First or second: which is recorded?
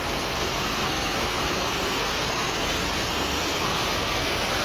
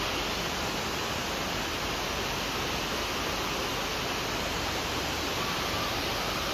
second